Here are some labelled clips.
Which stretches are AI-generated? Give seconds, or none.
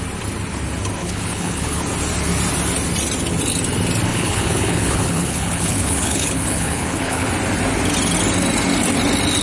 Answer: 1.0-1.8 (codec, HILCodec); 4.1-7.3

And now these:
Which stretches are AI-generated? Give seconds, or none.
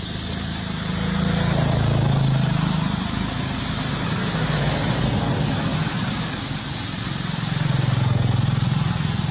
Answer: none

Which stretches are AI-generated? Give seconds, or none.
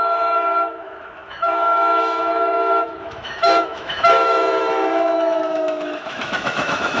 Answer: 0.0-7.0 (autoencoder, DAC-VAE)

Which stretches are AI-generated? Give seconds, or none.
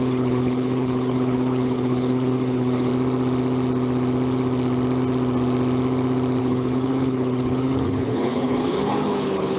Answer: 0.0-2.9 (codec, HILCodec); 6.4-9.6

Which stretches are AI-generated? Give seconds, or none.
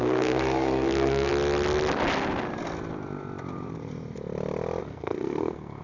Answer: 0.0-1.3 (codec, SNAC); 4.8-5.8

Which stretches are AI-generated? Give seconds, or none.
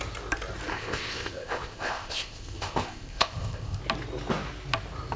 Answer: 0.7-3.8 (codec, ZipCodec)